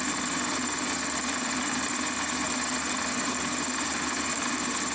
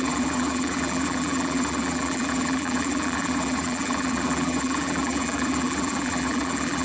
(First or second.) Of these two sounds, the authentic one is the first